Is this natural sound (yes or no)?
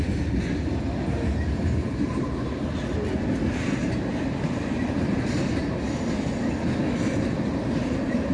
yes